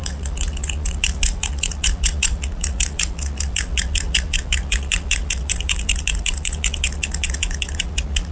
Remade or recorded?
remade